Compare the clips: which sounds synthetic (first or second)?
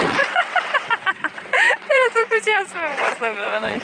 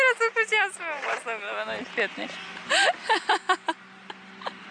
first